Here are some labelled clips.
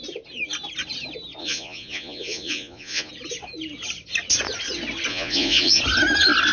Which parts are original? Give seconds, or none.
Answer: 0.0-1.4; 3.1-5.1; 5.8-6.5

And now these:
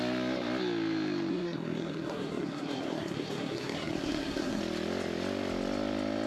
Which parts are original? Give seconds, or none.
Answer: 0.0-1.3; 4.6-6.3

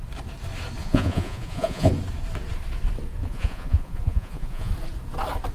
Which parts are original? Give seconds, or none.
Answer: 0.0-0.8; 1.9-3.3; 4.7-5.5

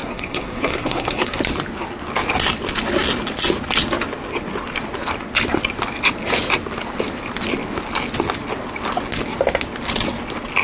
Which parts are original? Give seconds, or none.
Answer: 1.4-10.6

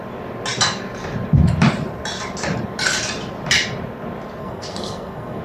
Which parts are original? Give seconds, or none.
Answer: 0.0-4.4